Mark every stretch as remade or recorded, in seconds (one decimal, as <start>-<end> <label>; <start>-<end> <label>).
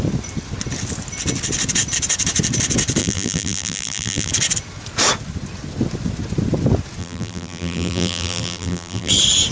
0.0-3.0 recorded; 3.0-4.3 remade; 4.3-7.0 recorded; 7.0-9.1 remade; 9.1-9.5 recorded